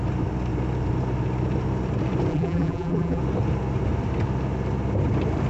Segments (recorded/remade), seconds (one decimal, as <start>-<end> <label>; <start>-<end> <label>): 0.0-2.3 recorded; 2.3-3.2 remade; 3.2-5.5 recorded